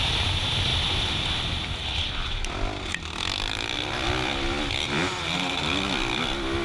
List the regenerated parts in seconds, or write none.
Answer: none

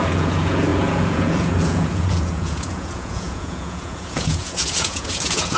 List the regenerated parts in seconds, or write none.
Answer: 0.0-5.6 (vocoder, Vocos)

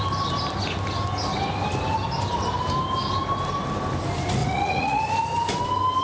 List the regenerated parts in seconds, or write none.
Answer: 4.4-5.0 (vocoder, Vocos)

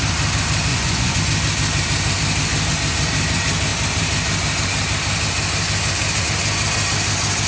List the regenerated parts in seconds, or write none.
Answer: 0.7-1.2 (vocoder, Vocos)

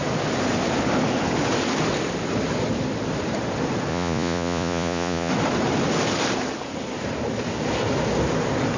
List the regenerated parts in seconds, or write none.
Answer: 3.9-5.3 (vocoder, Vocos)

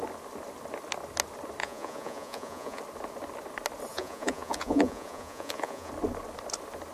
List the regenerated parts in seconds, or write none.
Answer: 1.6-2.8 (vocoder, Vocos); 3.9-5.9

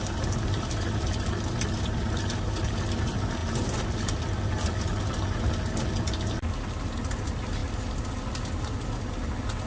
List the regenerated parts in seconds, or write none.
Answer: none